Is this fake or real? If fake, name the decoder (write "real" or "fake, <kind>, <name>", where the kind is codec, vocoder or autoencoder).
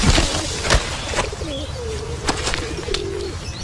real